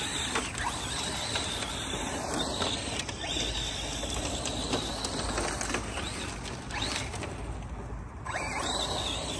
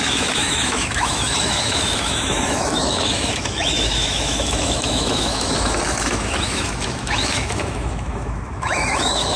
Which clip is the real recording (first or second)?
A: first